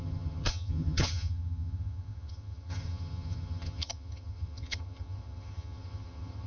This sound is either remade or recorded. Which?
remade